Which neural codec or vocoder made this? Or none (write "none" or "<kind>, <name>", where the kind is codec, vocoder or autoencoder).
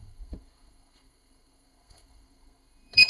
codec, SNAC